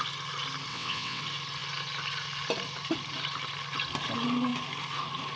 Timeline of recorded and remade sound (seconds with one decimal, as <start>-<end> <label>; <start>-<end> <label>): 0.0-0.7 recorded; 0.7-1.2 remade; 1.2-5.4 recorded